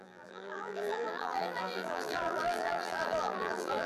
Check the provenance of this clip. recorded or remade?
remade